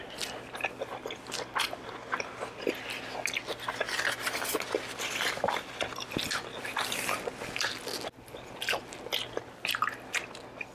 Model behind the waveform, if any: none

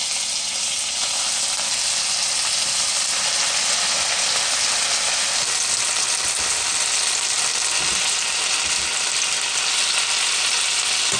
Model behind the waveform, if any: none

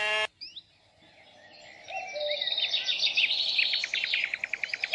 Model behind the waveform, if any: none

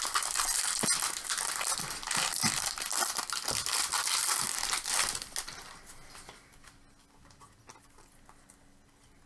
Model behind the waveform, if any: none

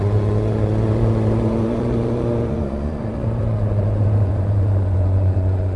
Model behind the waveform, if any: vocoder, Vocos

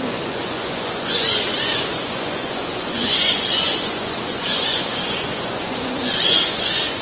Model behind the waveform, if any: vocoder, Vocos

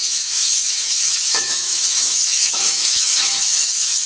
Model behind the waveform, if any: autoencoder, DAC-VAE